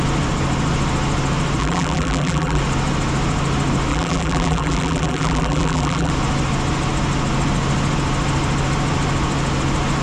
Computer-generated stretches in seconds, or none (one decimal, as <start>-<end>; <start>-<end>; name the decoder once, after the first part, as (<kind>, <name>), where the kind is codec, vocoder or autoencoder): 1.6-2.6 (vocoder, BigVGAN v2); 3.9-6.1